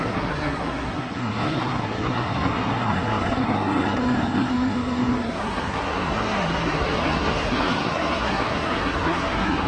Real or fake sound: fake